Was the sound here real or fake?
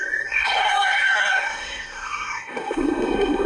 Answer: fake